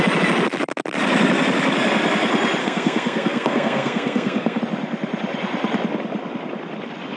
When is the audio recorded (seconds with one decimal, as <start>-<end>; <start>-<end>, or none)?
0.0-2.6; 4.6-7.2